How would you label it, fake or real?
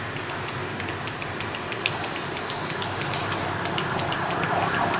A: real